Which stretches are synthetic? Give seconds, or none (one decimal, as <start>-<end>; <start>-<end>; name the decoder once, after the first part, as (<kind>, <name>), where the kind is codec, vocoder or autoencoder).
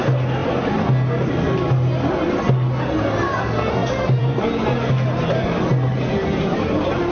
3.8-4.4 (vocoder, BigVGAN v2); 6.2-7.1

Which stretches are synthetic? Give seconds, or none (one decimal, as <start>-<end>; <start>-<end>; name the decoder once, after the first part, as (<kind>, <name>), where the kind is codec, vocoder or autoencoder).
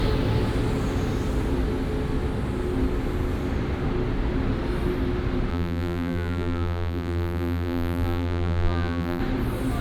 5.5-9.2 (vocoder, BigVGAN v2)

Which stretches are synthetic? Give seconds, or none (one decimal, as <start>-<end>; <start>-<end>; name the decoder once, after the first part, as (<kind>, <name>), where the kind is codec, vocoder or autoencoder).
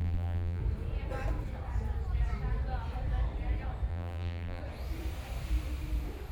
0.0-0.6 (vocoder, BigVGAN v2); 3.9-4.6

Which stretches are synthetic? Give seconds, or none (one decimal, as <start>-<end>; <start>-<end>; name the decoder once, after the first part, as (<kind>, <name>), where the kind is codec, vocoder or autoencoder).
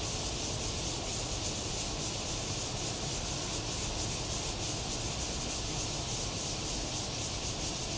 1.1-1.7 (vocoder, BigVGAN v2)